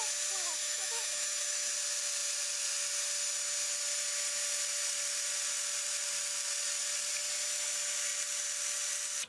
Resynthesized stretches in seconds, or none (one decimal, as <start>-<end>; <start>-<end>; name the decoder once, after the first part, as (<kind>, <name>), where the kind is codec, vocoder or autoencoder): 0.6-1.7 (autoencoder, DAC-VAE)